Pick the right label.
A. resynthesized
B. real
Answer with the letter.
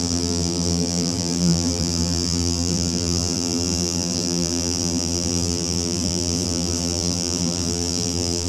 A